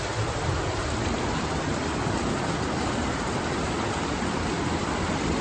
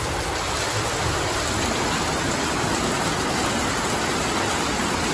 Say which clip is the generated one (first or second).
first